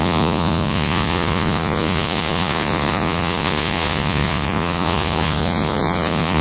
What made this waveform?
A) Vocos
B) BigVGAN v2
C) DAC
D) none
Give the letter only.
A